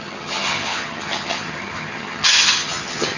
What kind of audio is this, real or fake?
fake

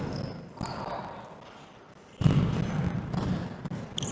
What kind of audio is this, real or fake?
real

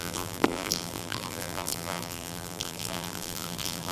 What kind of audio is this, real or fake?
fake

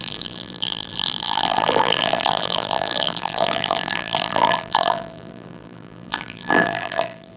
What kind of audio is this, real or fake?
fake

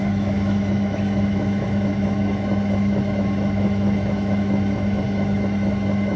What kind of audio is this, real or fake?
fake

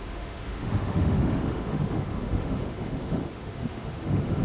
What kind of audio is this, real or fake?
fake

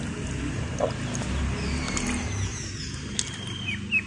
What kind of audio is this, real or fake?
real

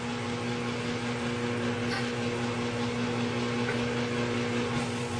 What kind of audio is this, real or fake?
real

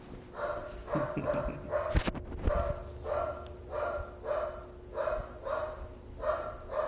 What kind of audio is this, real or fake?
real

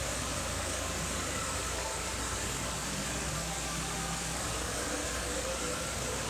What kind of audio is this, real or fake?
fake